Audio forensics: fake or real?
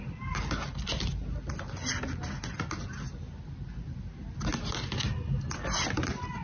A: real